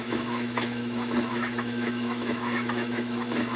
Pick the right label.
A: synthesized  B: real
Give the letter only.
A